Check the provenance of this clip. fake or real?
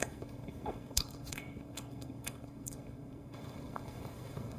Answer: fake